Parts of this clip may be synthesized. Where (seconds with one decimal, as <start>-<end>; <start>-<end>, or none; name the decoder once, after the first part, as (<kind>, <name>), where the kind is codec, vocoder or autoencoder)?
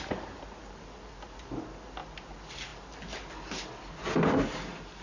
2.7-3.3 (vocoder, BigVGAN v2)